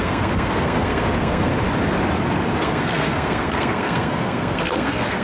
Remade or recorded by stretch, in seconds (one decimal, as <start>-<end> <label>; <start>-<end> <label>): 0.0-1.5 remade; 1.5-2.6 recorded; 2.6-5.2 remade